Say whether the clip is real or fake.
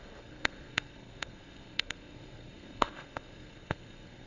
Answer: fake